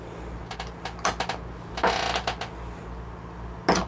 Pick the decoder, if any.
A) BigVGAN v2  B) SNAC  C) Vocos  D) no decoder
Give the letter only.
D